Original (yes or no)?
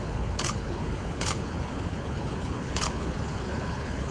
no